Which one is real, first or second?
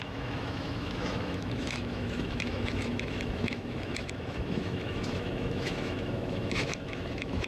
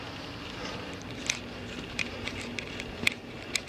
second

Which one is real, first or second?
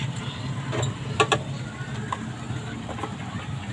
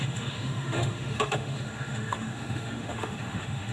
first